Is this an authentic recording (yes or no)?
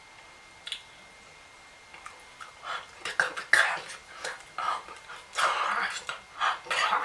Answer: yes